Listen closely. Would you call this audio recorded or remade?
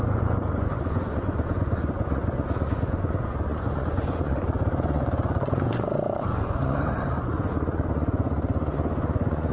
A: remade